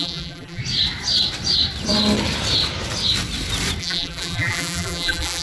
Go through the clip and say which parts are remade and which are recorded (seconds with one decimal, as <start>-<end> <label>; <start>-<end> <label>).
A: 0.0-0.6 remade; 0.6-3.8 recorded; 3.8-5.4 remade